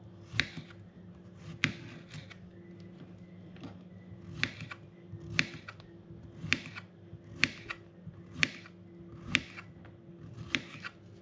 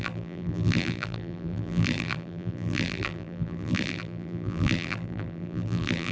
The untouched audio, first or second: first